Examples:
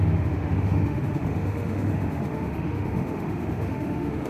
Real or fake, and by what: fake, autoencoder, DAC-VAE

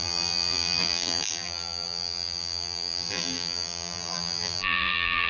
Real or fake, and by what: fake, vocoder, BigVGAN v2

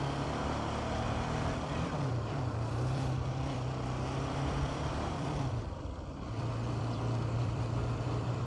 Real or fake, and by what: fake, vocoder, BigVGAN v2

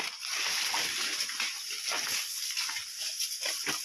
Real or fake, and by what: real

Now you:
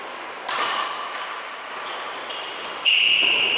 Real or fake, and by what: real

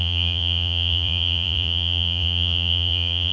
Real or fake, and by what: fake, vocoder, Vocos